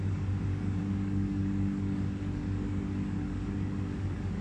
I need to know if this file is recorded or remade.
remade